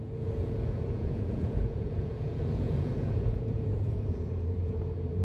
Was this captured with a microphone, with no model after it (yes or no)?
no